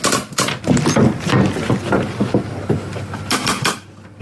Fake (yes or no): no